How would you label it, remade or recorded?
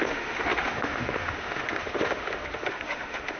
remade